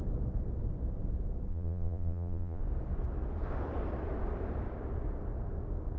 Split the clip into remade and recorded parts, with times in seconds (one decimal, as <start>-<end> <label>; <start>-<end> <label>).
0.0-1.5 recorded; 1.5-2.6 remade; 2.6-6.0 recorded